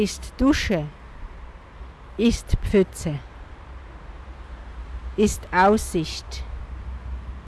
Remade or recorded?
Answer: recorded